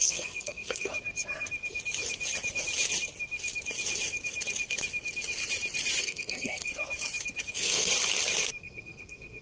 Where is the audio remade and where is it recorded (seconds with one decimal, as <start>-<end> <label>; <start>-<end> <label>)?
0.0-0.9 remade; 0.9-6.0 recorded; 6.0-6.7 remade; 6.7-7.5 recorded; 7.5-7.9 remade; 7.9-8.6 recorded; 8.6-9.4 remade